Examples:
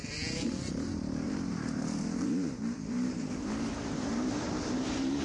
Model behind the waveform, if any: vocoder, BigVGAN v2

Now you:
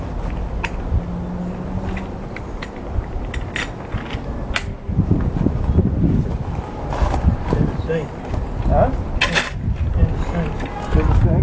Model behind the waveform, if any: none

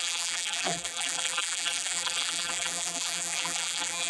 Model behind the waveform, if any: vocoder, BigVGAN v2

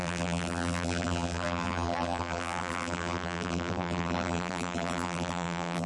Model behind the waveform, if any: vocoder, BigVGAN v2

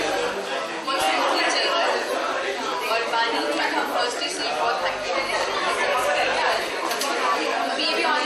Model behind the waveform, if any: none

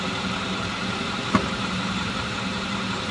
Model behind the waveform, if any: vocoder, BigVGAN v2